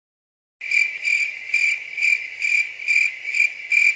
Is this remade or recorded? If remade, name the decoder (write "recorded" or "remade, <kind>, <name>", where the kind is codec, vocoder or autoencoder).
recorded